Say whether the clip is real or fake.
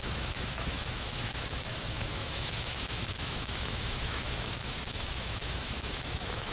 fake